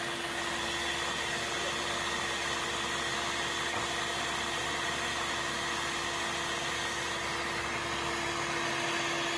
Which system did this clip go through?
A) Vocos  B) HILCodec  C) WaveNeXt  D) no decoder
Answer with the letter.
D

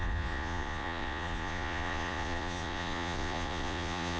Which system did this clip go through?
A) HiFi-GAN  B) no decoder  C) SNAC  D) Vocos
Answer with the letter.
D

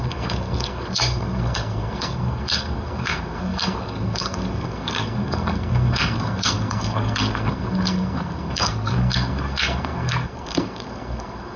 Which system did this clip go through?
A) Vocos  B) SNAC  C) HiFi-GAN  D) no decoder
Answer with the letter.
B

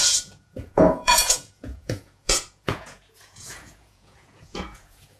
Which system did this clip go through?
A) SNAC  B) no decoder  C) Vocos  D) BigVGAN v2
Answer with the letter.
C